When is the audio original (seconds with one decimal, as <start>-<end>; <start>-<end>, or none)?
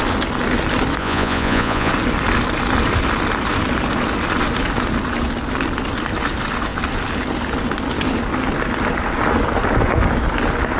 0.0-1.0; 1.9-10.8